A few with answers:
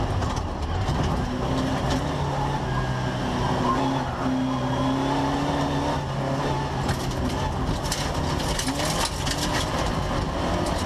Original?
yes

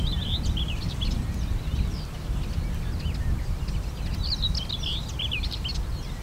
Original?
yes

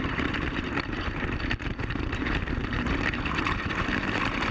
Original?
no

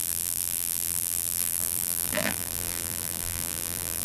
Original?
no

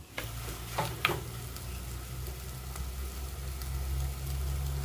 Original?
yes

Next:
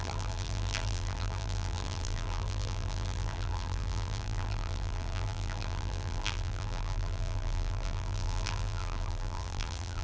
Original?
no